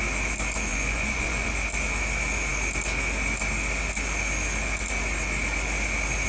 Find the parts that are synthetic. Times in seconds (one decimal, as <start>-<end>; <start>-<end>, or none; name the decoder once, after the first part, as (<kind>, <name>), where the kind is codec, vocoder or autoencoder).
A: 0.7-1.5 (vocoder, Vocos)